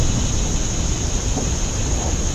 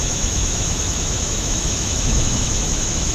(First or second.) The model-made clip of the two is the second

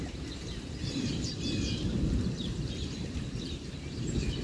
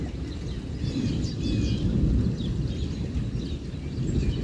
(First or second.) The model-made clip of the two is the first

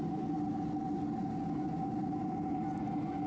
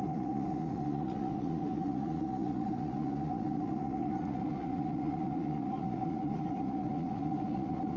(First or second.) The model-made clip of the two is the second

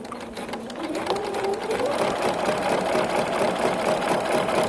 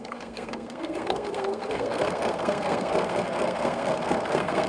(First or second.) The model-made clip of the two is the second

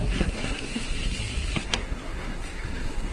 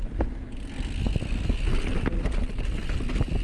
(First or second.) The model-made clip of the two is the first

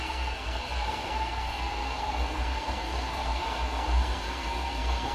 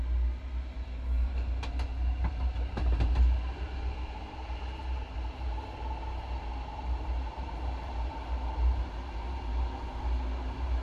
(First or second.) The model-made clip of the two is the first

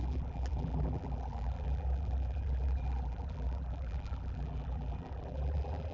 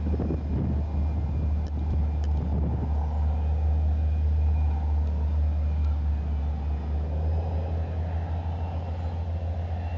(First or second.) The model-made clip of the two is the first